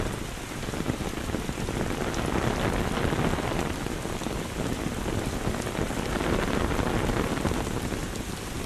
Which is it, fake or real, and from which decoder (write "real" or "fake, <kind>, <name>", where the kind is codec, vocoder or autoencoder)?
real